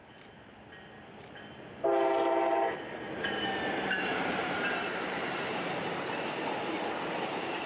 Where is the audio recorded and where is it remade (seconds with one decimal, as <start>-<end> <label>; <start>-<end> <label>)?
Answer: 0.0-3.2 recorded; 3.2-7.7 remade